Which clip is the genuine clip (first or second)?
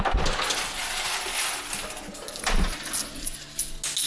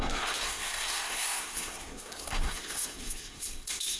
first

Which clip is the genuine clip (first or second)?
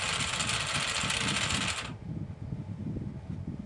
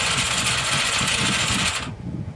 first